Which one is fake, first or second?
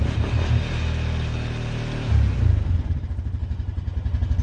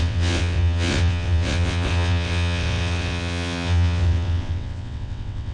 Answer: second